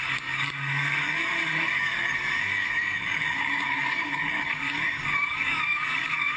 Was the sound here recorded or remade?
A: remade